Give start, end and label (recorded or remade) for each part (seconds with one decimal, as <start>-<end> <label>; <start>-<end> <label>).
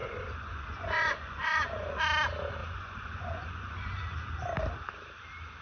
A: 0.0-2.0 remade; 2.0-2.6 recorded; 2.6-4.0 remade; 4.0-5.6 recorded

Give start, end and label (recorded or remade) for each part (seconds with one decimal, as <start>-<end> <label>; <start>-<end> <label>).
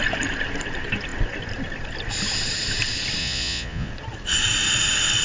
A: 0.0-3.2 recorded; 3.2-3.9 remade; 3.9-5.2 recorded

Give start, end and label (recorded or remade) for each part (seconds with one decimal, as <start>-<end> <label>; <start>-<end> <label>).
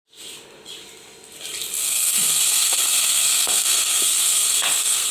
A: 0.0-1.8 recorded; 1.8-5.1 remade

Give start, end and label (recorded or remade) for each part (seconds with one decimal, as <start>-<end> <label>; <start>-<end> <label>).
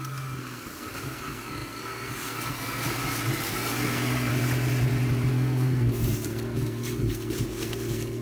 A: 0.0-3.0 remade; 3.0-3.5 recorded; 3.5-4.3 remade; 4.3-5.3 recorded; 5.3-8.2 remade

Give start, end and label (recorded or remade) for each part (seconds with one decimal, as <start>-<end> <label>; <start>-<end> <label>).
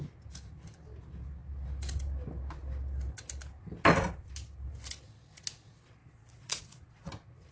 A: 0.0-6.0 recorded; 6.0-7.1 remade; 7.1-7.5 recorded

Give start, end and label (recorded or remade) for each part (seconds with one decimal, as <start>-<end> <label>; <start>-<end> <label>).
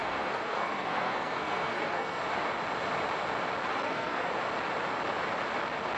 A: 0.0-2.2 remade; 2.2-3.7 recorded; 3.7-4.3 remade; 4.3-6.0 recorded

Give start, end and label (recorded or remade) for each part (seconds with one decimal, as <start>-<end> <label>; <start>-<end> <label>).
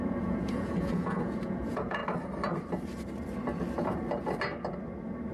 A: 0.0-2.0 remade; 2.0-5.3 recorded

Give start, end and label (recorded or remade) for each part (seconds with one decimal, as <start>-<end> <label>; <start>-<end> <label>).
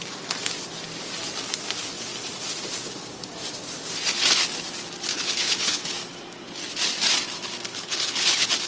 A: 0.0-5.1 recorded; 5.1-5.8 remade; 5.8-7.7 recorded; 7.7-8.7 remade